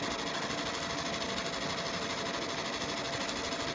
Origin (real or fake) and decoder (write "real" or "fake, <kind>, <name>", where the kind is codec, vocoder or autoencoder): real